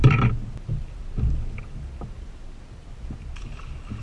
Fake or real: real